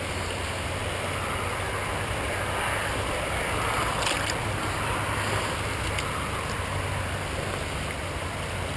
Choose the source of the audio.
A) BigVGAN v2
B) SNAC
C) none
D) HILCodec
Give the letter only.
C